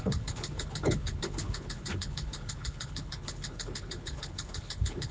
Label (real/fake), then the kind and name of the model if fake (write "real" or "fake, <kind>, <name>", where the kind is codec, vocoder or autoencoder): fake, codec, HILCodec